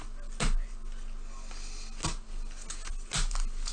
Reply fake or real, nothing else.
real